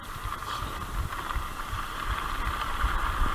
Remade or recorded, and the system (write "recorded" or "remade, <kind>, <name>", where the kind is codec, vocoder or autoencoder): recorded